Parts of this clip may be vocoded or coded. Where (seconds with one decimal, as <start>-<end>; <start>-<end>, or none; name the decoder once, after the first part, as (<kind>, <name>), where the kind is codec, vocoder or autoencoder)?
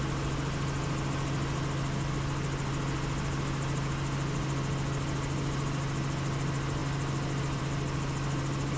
none